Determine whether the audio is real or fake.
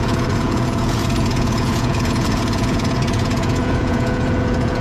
fake